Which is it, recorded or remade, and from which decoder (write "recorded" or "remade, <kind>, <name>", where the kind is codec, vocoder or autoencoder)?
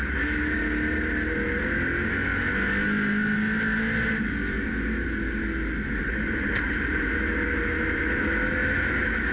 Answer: recorded